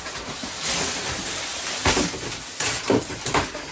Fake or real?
real